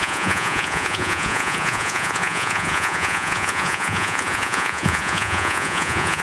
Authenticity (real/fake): fake